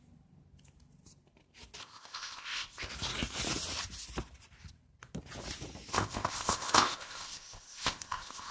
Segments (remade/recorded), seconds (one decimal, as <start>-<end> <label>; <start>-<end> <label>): 0.0-1.8 recorded; 1.8-2.9 remade; 2.9-5.9 recorded; 5.9-8.5 remade